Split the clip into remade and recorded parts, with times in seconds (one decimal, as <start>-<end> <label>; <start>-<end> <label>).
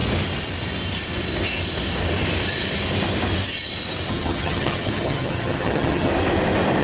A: 0.0-4.1 recorded; 4.1-6.1 remade; 6.1-6.8 recorded